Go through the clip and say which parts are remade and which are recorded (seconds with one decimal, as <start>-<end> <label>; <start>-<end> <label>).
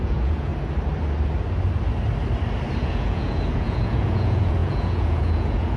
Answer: 0.0-0.5 remade; 0.5-2.8 recorded; 2.8-5.8 remade